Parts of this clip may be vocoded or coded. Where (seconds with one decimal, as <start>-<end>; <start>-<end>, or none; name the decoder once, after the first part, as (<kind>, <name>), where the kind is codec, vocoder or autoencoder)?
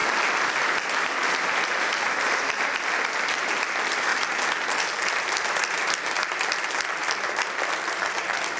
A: 2.6-4.1 (vocoder, BigVGAN v2); 5.5-8.6